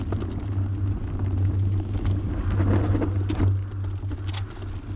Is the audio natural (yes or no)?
yes